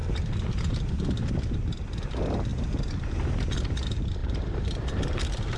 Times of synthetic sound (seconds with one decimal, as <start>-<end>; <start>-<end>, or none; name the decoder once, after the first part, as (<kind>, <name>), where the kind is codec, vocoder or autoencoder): none